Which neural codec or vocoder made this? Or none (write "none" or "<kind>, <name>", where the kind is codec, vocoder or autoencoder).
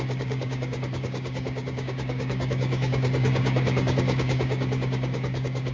codec, DAC